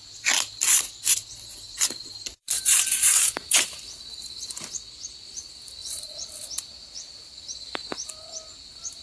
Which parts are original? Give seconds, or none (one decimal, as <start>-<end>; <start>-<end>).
0.0-2.4; 4.7-5.8; 6.3-6.8; 8.1-9.0